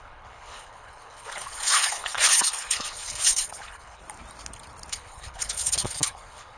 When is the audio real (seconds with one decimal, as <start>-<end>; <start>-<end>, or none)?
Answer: 4.0-4.9